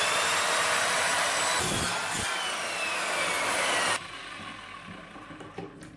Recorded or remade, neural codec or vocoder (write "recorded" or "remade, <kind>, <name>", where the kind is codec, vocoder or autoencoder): recorded